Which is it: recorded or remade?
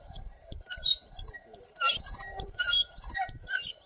remade